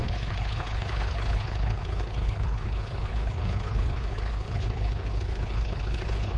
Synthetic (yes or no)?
yes